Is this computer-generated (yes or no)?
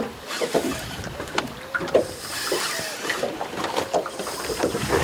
yes